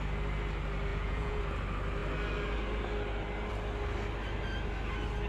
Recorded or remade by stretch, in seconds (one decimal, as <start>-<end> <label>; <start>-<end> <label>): 0.0-0.9 recorded; 0.9-1.4 remade; 1.4-5.3 recorded

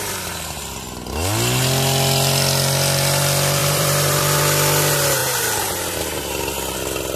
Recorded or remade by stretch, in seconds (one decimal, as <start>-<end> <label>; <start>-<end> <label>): 0.0-3.6 recorded; 3.6-4.2 remade; 4.2-5.2 recorded; 5.2-6.2 remade; 6.2-7.2 recorded

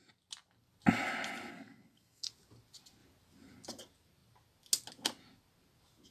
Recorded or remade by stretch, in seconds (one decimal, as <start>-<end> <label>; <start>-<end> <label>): 0.0-1.5 recorded; 1.5-2.3 remade; 2.3-6.1 recorded

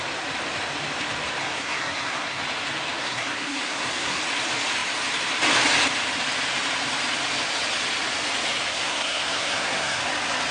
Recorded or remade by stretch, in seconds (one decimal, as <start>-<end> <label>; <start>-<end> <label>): 0.0-1.4 recorded; 1.4-2.4 remade; 2.4-3.0 recorded; 3.0-4.2 remade; 4.2-8.7 recorded; 8.7-10.0 remade; 10.0-10.5 recorded